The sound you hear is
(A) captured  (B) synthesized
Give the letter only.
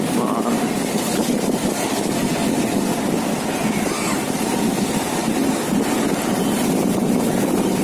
A